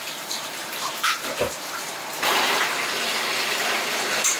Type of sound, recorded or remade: remade